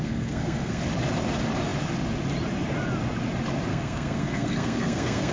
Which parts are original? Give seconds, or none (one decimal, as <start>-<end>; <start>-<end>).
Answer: 0.8-3.7